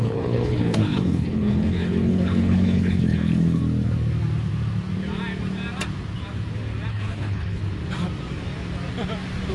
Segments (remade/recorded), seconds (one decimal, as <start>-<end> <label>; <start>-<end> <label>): 0.0-3.6 remade; 3.6-6.9 recorded; 6.9-7.6 remade; 7.6-9.5 recorded